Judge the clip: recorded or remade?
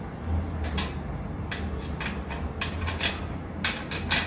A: recorded